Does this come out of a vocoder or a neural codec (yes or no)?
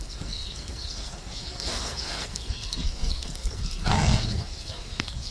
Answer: yes